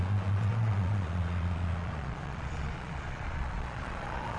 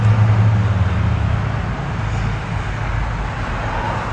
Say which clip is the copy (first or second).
first